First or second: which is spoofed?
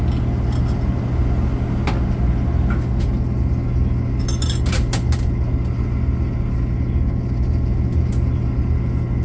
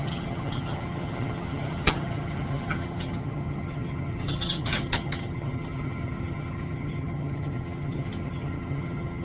second